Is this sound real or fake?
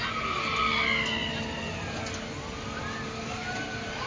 real